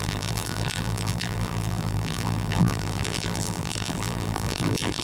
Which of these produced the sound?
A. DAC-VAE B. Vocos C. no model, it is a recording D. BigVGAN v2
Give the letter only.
D